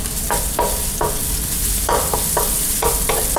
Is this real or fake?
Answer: real